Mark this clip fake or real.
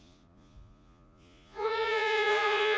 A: fake